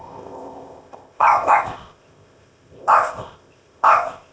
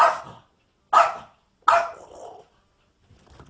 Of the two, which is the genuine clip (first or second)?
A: second